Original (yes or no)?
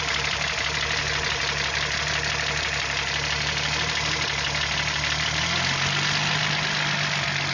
yes